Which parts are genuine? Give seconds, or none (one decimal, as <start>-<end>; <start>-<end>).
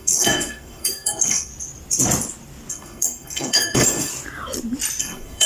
1.5-2.7; 4.1-5.0